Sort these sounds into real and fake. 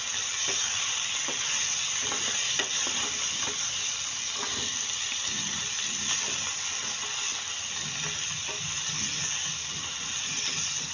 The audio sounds real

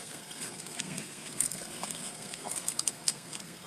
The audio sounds fake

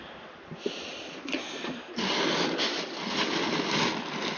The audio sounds real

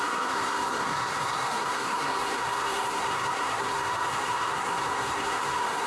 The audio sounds fake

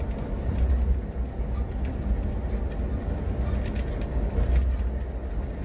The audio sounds real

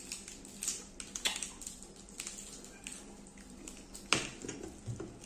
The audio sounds real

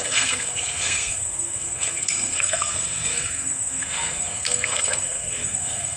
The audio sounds fake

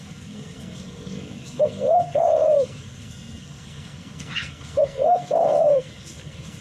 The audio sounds fake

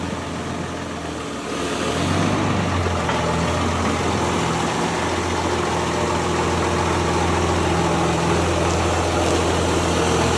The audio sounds real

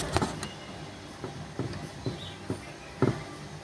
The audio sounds real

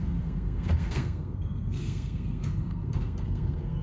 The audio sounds fake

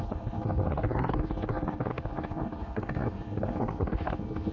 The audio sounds fake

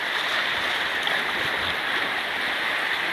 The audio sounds real